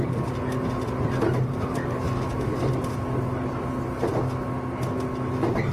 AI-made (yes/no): no